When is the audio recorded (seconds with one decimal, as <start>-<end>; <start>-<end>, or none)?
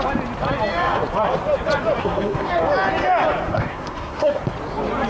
0.0-2.0; 2.5-3.5; 4.4-5.1